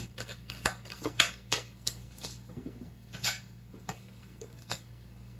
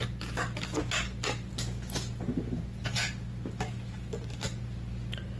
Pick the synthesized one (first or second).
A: first